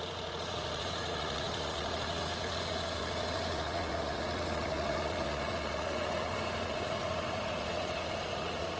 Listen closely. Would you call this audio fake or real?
fake